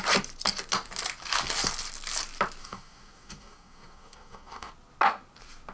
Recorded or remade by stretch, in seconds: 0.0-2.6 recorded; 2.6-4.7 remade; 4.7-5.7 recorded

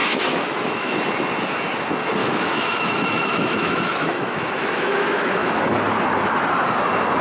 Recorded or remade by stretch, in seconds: 0.0-1.0 remade; 1.0-2.2 recorded; 2.2-5.5 remade; 5.5-7.2 recorded

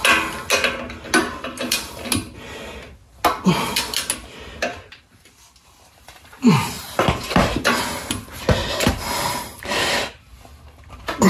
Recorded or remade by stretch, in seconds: 0.0-1.2 recorded; 1.2-2.0 remade; 2.0-4.7 recorded; 4.7-7.8 remade; 7.8-8.6 recorded; 8.6-10.2 remade; 10.2-11.3 recorded

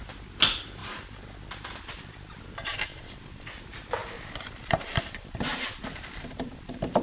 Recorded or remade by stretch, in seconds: 0.0-2.9 recorded; 2.9-3.6 remade; 3.6-4.0 recorded; 4.0-7.0 remade

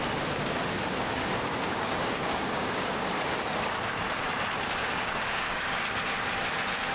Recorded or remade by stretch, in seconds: 0.0-0.8 recorded; 0.8-3.1 remade; 3.1-4.8 recorded; 4.8-5.8 remade; 5.8-6.9 recorded